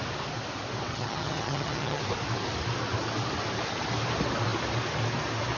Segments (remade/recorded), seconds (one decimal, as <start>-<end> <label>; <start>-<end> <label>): 0.0-0.9 recorded; 0.9-2.0 remade; 2.0-5.6 recorded